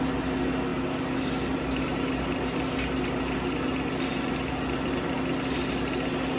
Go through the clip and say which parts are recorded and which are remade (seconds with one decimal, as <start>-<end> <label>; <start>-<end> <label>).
0.0-0.7 recorded; 0.7-4.5 remade; 4.5-6.4 recorded